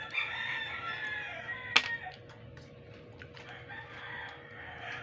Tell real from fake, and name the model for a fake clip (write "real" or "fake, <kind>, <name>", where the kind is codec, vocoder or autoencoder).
real